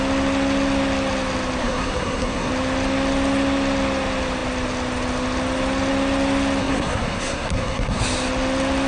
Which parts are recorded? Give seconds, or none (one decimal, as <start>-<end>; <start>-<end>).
0.0-1.6; 2.5-6.6; 8.0-8.9